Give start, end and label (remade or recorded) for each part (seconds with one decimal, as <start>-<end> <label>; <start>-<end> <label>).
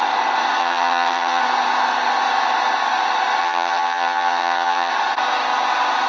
0.0-0.6 recorded; 0.6-1.4 remade; 1.4-3.4 recorded; 3.4-4.9 remade; 4.9-6.1 recorded